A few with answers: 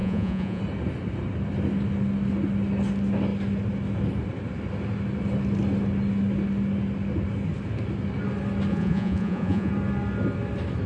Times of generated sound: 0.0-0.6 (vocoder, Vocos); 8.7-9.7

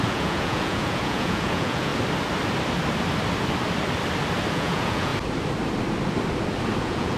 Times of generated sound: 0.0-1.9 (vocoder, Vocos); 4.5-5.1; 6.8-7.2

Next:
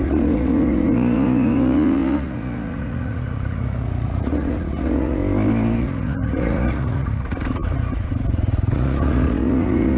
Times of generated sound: 0.0-5.2 (vocoder, Vocos); 5.8-10.0

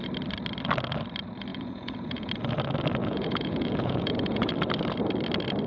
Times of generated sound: 1.5-2.3 (vocoder, Vocos); 3.0-4.5